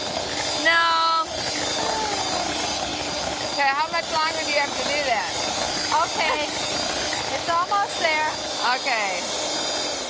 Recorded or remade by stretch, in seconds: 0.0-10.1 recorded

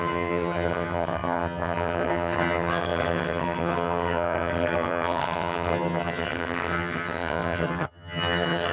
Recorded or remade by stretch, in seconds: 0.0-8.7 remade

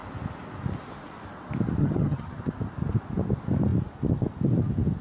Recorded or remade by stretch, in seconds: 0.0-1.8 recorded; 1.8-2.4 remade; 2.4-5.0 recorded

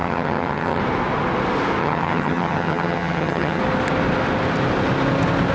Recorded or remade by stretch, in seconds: 0.0-0.8 remade; 0.8-1.8 recorded; 1.8-3.6 remade; 3.6-5.5 recorded

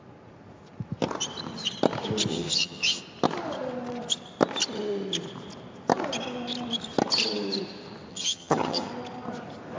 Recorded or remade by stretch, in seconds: 0.0-2.3 recorded; 2.3-3.0 remade; 3.0-8.1 recorded; 8.1-8.9 remade; 8.9-9.8 recorded

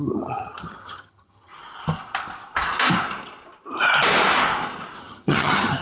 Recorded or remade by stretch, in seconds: 0.0-1.5 remade; 1.5-5.0 recorded; 5.0-5.8 remade